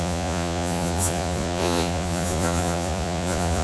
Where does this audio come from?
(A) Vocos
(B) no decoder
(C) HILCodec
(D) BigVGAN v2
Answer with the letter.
A